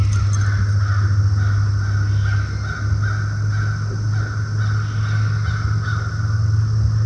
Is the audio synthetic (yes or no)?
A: no